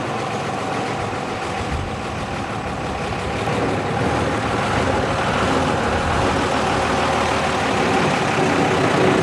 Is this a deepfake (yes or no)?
no